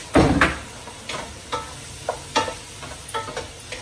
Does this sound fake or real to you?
real